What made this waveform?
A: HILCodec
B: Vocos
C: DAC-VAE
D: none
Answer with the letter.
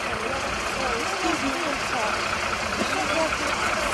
D